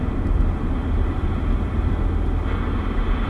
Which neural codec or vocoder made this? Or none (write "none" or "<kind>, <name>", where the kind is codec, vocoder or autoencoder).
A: none